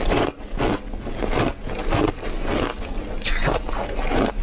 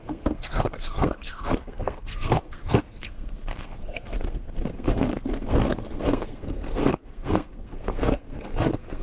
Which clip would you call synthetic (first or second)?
second